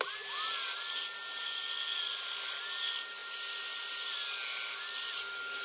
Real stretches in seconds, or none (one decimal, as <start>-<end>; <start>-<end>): 0.0-5.6